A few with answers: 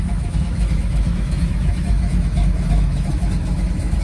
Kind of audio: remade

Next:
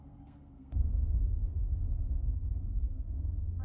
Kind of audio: remade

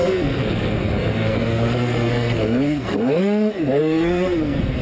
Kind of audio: remade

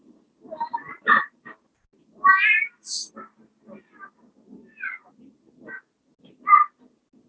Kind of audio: recorded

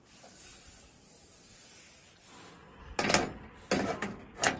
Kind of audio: recorded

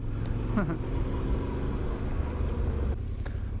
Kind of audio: recorded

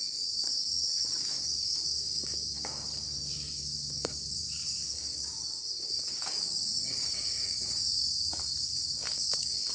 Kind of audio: remade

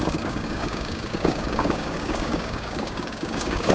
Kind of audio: remade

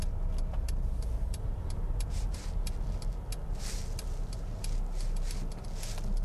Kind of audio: recorded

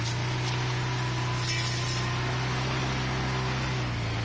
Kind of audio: recorded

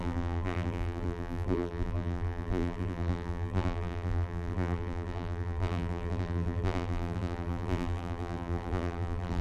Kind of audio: remade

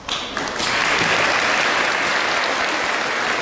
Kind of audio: recorded